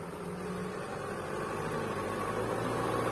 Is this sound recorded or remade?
recorded